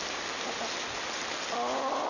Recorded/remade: recorded